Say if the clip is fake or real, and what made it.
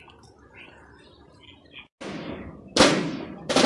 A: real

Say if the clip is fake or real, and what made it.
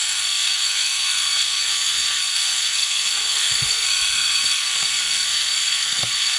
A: fake, codec, SNAC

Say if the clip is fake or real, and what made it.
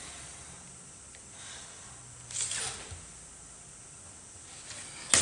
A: real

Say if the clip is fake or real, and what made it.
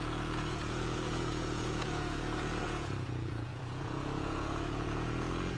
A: fake, vocoder, Vocos